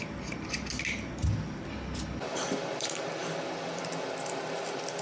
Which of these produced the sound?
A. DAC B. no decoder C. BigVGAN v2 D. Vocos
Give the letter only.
B